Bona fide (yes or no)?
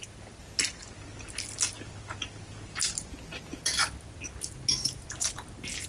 yes